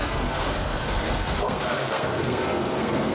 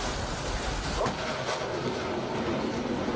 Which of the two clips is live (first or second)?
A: second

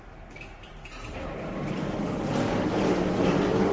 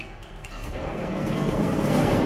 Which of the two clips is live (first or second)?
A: first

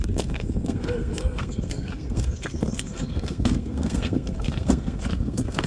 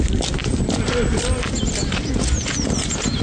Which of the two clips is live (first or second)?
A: second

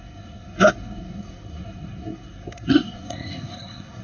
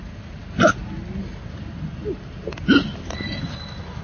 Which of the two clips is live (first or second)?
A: second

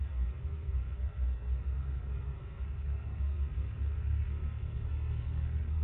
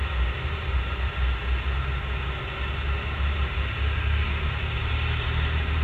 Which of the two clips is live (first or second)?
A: second